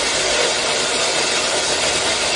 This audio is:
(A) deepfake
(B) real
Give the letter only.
B